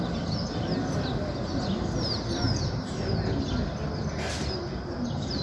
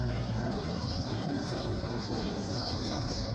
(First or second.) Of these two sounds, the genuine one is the first